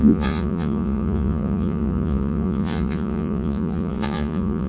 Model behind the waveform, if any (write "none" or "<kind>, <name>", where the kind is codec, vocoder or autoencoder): vocoder, Vocos